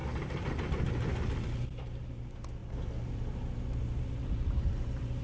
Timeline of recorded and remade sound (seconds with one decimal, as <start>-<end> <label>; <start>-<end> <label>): 0.0-1.6 recorded; 1.6-5.2 remade